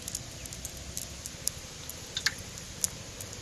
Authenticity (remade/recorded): recorded